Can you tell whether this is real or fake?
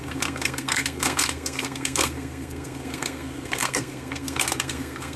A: fake